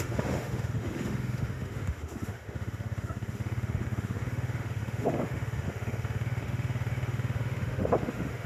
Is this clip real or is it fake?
fake